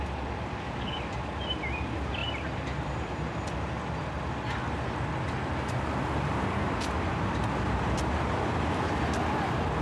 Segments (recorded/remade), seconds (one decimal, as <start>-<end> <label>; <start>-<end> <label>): 0.0-0.5 recorded; 0.5-1.0 remade; 1.0-9.8 recorded